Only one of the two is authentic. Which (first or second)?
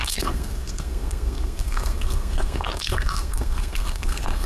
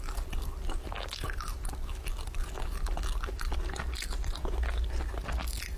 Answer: second